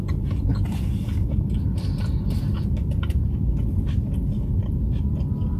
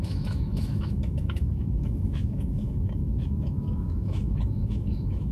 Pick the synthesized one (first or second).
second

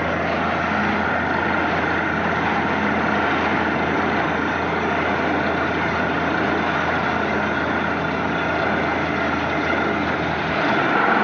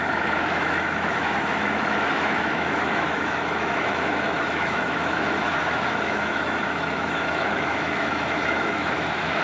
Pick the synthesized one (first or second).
second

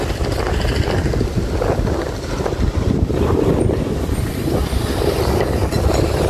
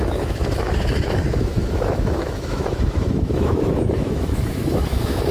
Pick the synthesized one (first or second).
second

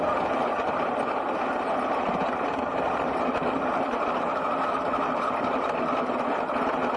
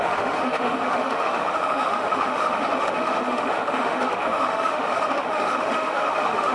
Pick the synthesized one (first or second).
second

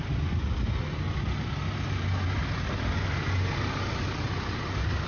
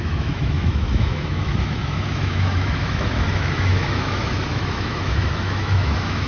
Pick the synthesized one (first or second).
second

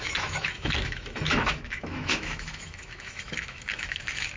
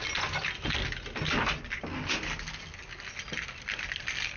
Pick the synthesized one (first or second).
first